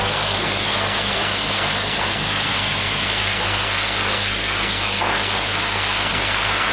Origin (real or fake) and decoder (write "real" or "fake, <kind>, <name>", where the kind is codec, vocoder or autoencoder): fake, codec, SNAC